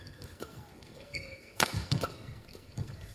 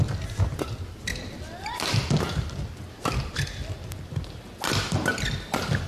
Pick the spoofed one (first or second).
first